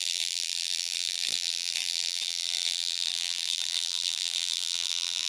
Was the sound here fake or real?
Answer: fake